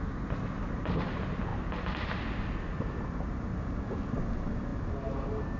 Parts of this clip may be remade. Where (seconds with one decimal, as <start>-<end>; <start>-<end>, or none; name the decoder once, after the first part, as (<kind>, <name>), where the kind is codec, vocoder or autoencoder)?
none